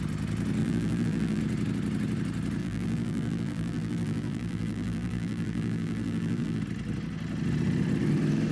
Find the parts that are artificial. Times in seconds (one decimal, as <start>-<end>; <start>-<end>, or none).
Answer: 0.6-1.4; 2.6-6.6